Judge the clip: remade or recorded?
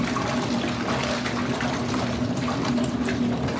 recorded